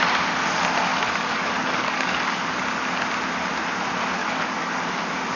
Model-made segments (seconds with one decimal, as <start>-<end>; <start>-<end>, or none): 0.9-2.5; 4.2-5.0